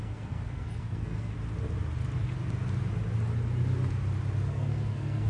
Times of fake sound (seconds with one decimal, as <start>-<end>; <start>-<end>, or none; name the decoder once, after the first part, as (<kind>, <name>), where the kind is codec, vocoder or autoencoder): 0.0-1.3 (codec, SNAC); 4.5-5.3